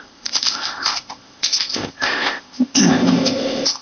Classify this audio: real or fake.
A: fake